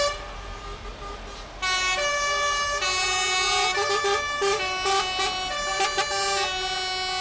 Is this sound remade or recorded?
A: recorded